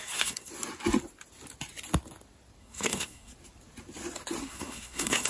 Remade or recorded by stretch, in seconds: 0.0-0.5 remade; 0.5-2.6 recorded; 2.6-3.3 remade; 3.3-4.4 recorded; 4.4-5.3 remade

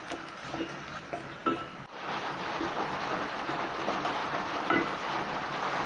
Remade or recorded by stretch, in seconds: 0.0-5.9 recorded

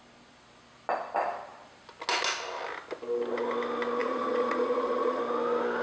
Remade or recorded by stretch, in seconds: 0.0-4.0 recorded; 4.0-5.2 remade; 5.2-5.8 recorded

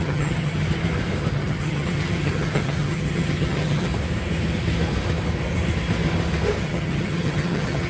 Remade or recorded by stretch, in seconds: 0.0-0.6 remade; 0.6-1.3 recorded; 1.3-3.9 remade; 3.9-6.6 recorded; 6.6-7.9 remade

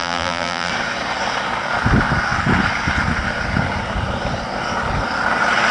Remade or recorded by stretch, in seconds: 0.0-0.7 remade; 0.7-5.7 recorded